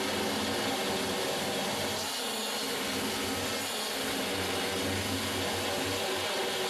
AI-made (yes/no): no